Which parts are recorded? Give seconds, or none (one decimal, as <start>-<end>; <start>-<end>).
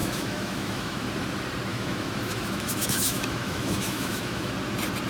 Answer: 1.1-1.7; 4.5-5.1